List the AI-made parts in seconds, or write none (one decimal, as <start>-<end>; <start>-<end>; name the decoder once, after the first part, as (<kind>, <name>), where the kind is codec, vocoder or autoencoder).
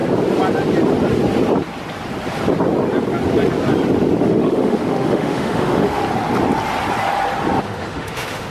4.2-6.0 (autoencoder, DAC-VAE); 7.6-8.5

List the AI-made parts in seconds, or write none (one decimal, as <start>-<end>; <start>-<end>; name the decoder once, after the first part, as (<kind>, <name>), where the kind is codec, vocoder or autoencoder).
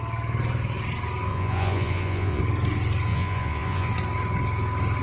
1.3-2.4 (vocoder, Vocos); 3.1-3.9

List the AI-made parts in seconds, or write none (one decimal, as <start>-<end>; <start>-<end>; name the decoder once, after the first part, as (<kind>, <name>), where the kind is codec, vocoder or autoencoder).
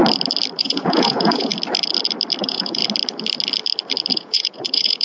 0.6-1.5 (vocoder, Vocos); 2.4-2.8; 4.1-5.0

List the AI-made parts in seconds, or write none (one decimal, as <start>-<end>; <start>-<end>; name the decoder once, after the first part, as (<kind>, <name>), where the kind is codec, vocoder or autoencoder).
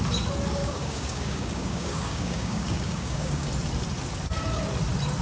0.6-3.5 (codec, DAC)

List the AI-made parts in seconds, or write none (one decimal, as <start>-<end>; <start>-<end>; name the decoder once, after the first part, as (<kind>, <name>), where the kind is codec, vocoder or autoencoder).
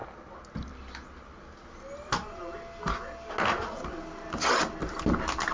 none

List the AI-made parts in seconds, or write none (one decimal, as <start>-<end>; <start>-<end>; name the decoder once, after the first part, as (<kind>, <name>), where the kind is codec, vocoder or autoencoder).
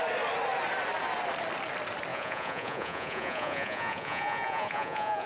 2.1-5.3 (vocoder, Vocos)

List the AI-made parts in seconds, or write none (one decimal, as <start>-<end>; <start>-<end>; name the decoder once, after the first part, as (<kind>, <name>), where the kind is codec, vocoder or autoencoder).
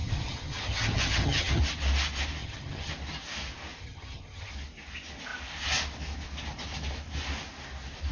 0.0-1.6 (vocoder, HiFi-GAN); 2.4-2.9; 3.8-4.5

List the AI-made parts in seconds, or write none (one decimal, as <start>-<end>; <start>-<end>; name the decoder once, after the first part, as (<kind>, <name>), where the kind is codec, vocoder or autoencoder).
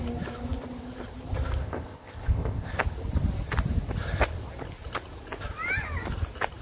1.6-2.7 (codec, ZipCodec)